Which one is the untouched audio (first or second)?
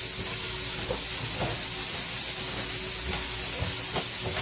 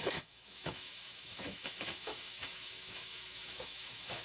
first